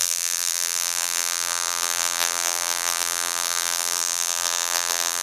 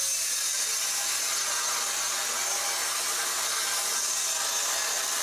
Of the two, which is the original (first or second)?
second